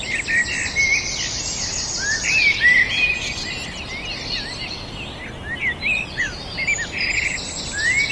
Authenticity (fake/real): real